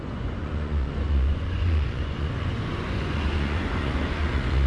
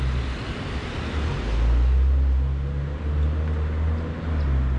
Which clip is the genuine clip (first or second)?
second